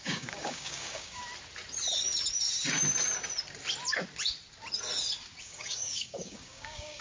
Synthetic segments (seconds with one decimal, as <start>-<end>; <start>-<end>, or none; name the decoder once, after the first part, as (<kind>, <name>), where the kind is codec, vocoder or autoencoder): 0.0-1.2 (codec, DAC); 5.4-7.0